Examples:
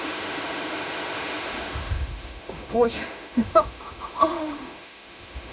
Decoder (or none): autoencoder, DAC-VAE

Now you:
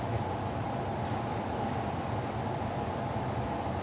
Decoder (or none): none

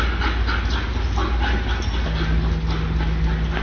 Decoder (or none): none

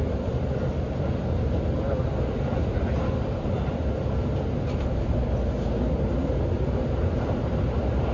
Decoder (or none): none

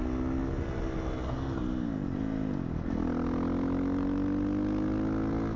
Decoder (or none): none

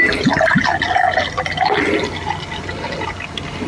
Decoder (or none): none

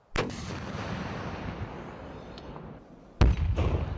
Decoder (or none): none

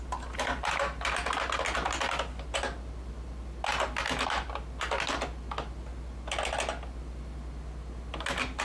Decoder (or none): none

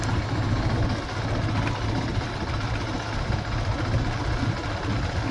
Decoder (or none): none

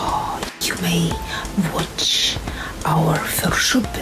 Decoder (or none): none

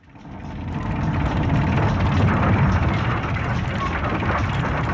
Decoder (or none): none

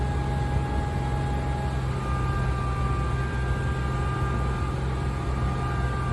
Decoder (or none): none